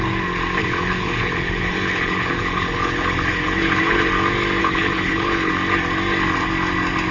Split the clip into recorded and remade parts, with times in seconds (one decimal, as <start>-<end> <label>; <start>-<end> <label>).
0.0-0.6 recorded; 0.6-4.1 remade; 4.1-4.6 recorded; 4.6-5.5 remade; 5.5-7.1 recorded